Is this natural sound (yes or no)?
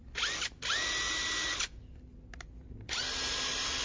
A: yes